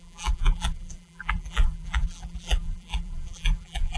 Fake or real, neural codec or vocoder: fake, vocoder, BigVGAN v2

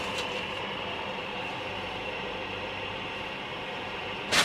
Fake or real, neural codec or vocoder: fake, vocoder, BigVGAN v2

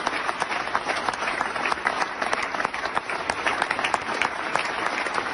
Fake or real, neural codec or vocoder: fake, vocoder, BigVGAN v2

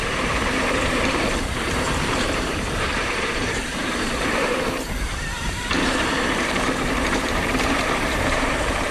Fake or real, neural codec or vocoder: fake, vocoder, BigVGAN v2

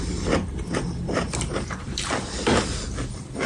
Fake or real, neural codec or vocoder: fake, vocoder, BigVGAN v2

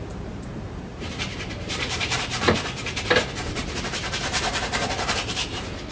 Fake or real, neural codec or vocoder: fake, vocoder, BigVGAN v2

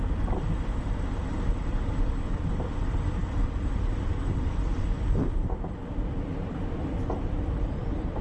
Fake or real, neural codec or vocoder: fake, vocoder, BigVGAN v2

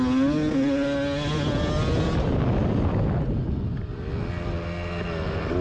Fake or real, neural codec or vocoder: real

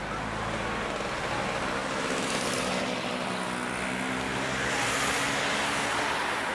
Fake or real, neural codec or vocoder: real